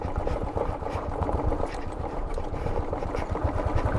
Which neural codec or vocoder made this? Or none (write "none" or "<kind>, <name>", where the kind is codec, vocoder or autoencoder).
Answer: vocoder, BigVGAN v2